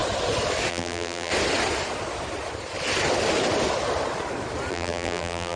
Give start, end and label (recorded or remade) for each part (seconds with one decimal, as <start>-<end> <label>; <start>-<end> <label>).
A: 0.0-0.7 recorded; 0.7-1.3 remade; 1.3-4.7 recorded; 4.7-5.6 remade